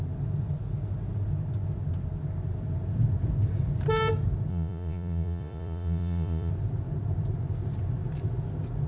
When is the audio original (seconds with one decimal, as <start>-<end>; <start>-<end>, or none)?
0.0-4.5; 6.5-8.9